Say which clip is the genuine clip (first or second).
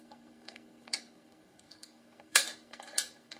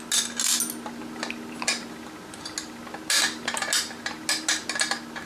second